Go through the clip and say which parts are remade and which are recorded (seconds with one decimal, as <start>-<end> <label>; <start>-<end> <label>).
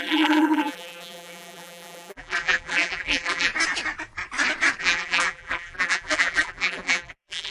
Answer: 0.0-3.5 remade; 3.5-4.8 recorded; 4.8-7.5 remade